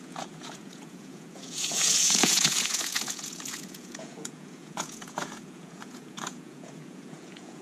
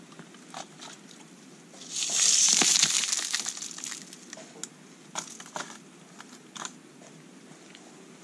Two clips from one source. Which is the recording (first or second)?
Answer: second